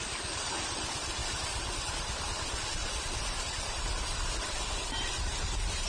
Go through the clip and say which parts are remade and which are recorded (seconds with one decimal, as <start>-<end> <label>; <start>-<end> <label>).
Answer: 0.0-1.2 remade; 1.2-2.0 recorded; 2.0-5.9 remade